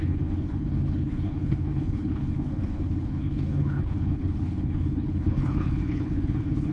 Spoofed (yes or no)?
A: yes